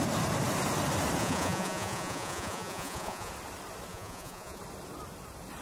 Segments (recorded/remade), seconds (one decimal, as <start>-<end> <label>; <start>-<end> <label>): 0.0-1.2 recorded; 1.2-3.3 remade; 3.3-3.9 recorded; 3.9-4.6 remade; 4.6-5.6 recorded